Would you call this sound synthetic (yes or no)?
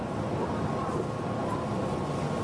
no